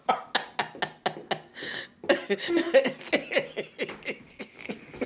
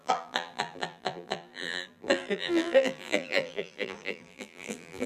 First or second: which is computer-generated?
second